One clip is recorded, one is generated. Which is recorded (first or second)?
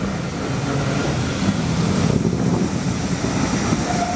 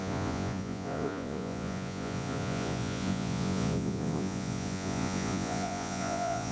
first